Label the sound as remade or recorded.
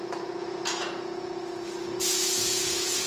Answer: remade